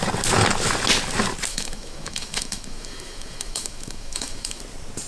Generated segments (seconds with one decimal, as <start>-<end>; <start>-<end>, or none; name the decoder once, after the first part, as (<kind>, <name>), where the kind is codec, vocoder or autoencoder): 1.5-4.6 (autoencoder, DAC-VAE)